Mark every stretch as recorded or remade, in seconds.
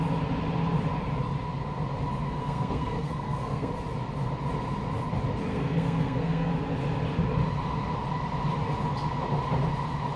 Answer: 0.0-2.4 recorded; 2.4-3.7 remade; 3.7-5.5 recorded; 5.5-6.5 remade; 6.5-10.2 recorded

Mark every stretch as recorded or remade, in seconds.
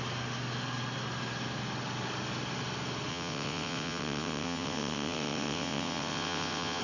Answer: 0.0-3.1 recorded; 3.1-6.8 remade